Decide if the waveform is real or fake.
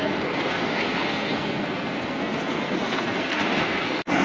fake